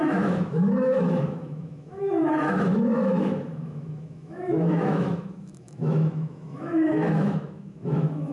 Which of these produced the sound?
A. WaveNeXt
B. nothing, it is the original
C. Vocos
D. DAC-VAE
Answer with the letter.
D